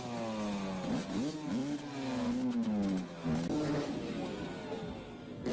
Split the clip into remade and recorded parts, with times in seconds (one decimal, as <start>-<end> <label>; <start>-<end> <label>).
0.0-5.5 recorded